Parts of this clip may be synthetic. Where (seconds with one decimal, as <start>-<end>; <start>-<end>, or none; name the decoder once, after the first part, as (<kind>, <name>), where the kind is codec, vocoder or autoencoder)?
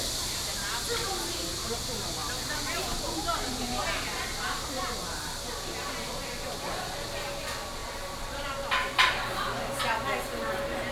none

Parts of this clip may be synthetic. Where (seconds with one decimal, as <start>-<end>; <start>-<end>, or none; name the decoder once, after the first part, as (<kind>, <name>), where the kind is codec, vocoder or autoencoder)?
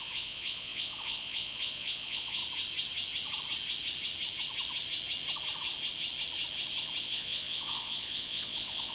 0.0-2.4 (vocoder, Vocos); 7.0-8.9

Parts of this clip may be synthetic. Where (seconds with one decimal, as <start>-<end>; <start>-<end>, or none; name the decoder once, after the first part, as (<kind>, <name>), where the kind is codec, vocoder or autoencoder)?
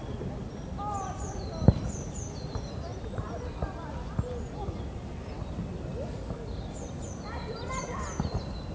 none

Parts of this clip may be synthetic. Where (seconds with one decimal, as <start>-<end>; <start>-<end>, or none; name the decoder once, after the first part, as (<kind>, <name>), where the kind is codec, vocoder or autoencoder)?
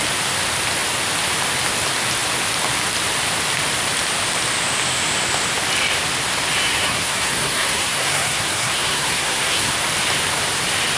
6.7-9.7 (codec, SNAC)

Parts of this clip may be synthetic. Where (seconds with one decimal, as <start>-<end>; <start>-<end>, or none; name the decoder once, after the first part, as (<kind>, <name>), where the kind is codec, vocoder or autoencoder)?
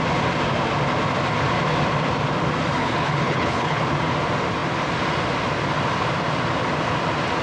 2.8-3.8 (codec, HILCodec)